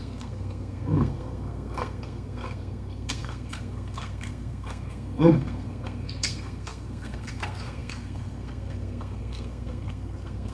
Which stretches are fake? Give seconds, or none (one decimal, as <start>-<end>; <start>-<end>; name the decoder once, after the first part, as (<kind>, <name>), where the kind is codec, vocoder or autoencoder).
0.0-10.5 (codec, SNAC)